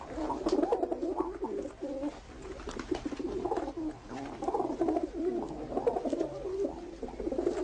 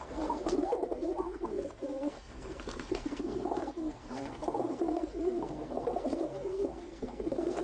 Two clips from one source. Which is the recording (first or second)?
first